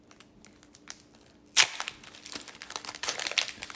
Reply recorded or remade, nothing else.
recorded